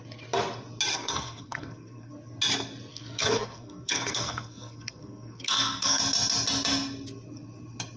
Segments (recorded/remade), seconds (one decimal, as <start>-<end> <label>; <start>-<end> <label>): 0.0-0.9 recorded; 0.9-2.1 remade; 2.1-2.9 recorded; 2.9-6.0 remade; 6.0-8.0 recorded